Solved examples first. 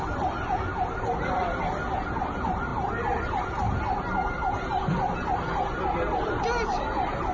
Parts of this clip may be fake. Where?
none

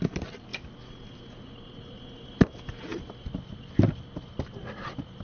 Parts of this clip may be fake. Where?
none

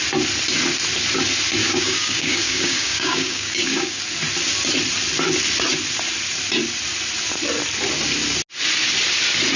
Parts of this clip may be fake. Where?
1.6-4.0 (codec, DAC)

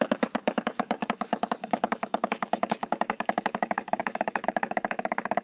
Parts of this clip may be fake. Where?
0.0-5.4 (codec, DAC)